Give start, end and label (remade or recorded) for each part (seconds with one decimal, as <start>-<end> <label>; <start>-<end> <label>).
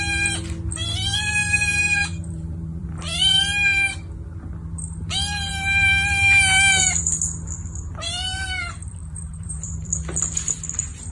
0.0-1.4 recorded; 1.4-3.4 remade; 3.4-9.0 recorded; 9.0-9.9 remade; 9.9-11.1 recorded